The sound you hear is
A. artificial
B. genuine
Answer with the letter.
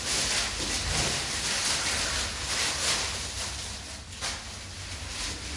B